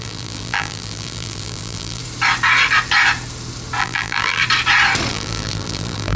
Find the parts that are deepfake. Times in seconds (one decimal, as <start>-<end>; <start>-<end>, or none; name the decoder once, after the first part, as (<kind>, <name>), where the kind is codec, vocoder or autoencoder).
0.0-2.0 (vocoder, BigVGAN v2); 3.8-4.4; 5.1-6.2